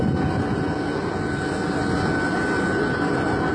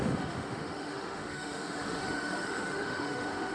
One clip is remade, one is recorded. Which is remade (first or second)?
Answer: second